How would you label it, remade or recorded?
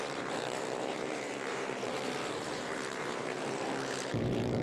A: remade